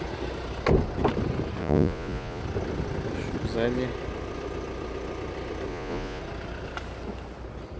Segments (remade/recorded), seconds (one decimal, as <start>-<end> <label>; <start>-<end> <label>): 0.0-1.6 recorded; 1.6-2.4 remade; 2.4-5.7 recorded; 5.7-6.2 remade; 6.2-7.8 recorded